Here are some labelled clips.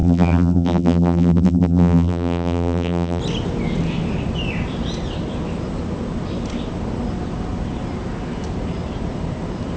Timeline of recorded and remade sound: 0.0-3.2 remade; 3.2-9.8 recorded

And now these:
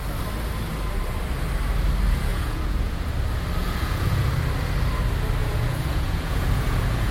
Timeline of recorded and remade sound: 0.0-2.3 recorded; 2.3-3.1 remade; 3.1-3.6 recorded; 3.6-4.3 remade; 4.3-5.4 recorded; 5.4-7.1 remade

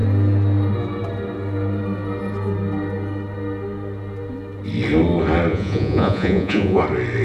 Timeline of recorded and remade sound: 0.0-5.5 recorded; 5.5-6.8 remade; 6.8-7.2 recorded

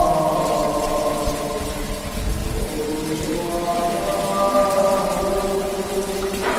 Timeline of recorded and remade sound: 0.0-6.6 recorded

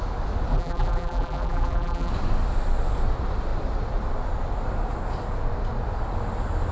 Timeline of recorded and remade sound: 0.0-0.5 recorded; 0.5-2.1 remade; 2.1-6.7 recorded